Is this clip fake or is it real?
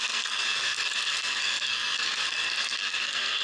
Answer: fake